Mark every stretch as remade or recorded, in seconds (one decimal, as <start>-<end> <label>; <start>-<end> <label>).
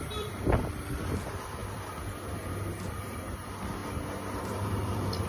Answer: 0.0-1.6 remade; 1.6-2.9 recorded; 2.9-3.8 remade; 3.8-4.4 recorded; 4.4-5.3 remade